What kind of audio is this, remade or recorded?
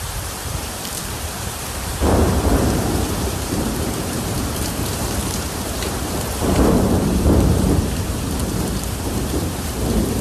remade